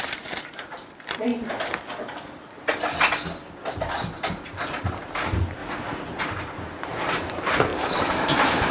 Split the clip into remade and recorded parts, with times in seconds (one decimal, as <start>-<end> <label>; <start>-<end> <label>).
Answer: 0.0-1.3 remade; 1.3-3.5 recorded; 3.5-5.6 remade; 5.6-6.2 recorded; 6.2-8.7 remade